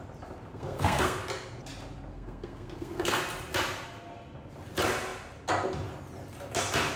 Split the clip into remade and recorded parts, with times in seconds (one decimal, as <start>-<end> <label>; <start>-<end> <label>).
0.0-0.5 recorded; 0.5-1.2 remade; 1.2-2.1 recorded; 2.1-3.2 remade; 3.2-7.0 recorded